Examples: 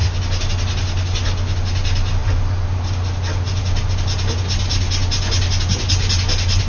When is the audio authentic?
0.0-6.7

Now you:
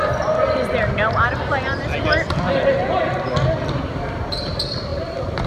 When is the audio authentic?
0.0-5.5

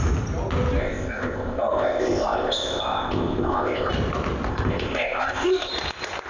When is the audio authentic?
0.0-0.8; 3.9-4.5; 5.7-6.3

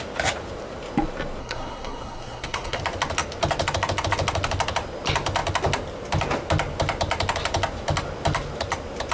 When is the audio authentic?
0.0-1.4; 2.8-9.1